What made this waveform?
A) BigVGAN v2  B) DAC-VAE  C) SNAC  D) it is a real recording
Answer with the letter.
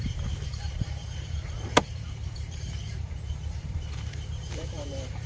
A